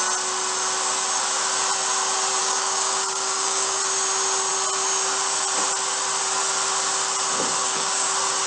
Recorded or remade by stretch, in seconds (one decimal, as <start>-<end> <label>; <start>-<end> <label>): 0.0-2.4 recorded; 2.4-3.8 remade; 3.8-7.6 recorded; 7.6-8.1 remade; 8.1-8.5 recorded